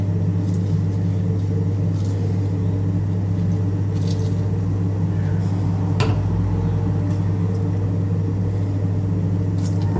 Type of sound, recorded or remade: recorded